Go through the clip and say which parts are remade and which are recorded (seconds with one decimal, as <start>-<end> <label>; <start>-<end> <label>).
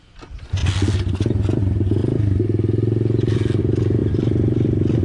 0.0-5.0 recorded